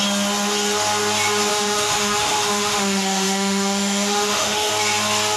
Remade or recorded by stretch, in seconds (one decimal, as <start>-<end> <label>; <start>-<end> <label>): 0.0-1.5 recorded; 1.5-4.7 remade; 4.7-5.4 recorded